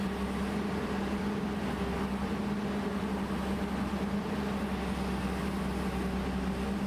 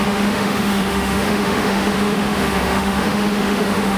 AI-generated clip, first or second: second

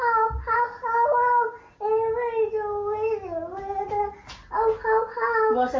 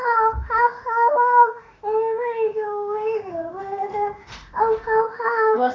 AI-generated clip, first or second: second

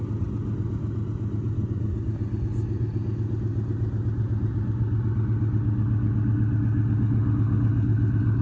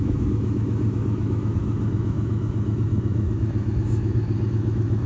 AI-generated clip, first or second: second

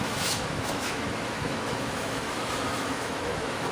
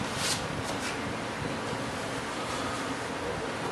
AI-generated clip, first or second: first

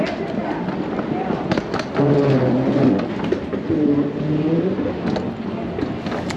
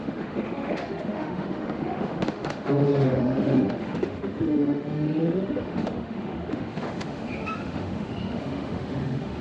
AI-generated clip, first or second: second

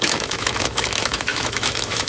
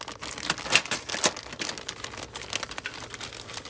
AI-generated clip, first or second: first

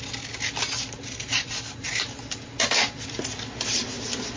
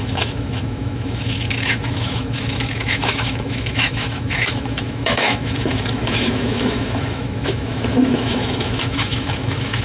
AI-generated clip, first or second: second